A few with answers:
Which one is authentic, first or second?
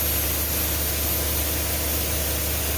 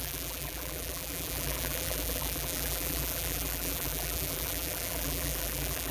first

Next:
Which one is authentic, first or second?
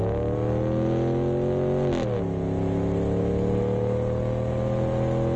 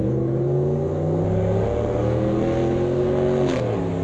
first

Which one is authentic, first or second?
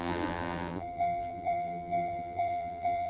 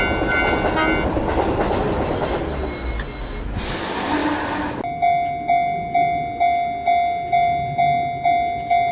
second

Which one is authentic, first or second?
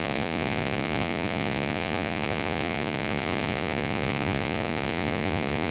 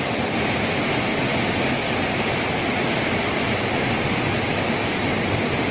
second